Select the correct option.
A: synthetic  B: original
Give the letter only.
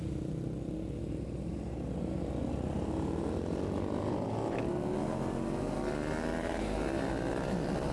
B